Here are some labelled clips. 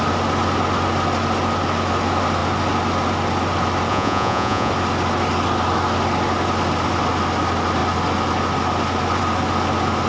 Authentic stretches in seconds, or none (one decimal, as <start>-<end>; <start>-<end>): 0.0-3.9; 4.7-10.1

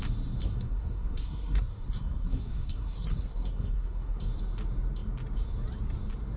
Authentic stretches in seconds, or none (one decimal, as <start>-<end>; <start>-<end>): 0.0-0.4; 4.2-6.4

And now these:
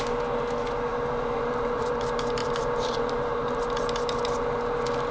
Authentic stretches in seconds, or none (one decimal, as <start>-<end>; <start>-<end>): 0.0-0.9; 1.9-2.4; 3.6-5.1